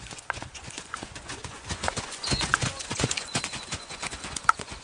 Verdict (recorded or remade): remade